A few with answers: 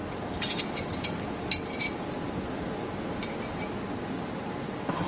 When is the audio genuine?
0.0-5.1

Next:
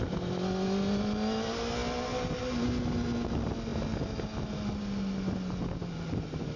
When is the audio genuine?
0.0-6.6